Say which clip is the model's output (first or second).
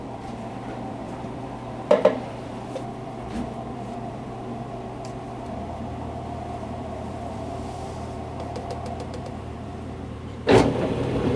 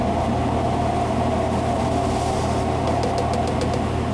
first